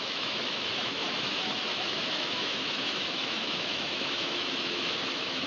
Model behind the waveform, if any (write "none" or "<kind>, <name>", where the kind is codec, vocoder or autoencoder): autoencoder, DAC-VAE